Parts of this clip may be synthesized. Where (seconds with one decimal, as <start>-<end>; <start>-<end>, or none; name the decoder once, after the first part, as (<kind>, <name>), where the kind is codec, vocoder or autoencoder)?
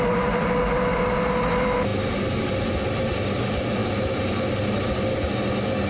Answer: none